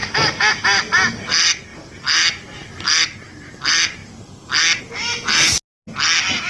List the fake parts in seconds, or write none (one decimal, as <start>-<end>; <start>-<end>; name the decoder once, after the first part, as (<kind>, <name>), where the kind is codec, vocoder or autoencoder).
none